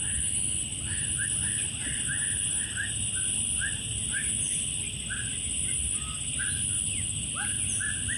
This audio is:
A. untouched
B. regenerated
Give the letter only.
A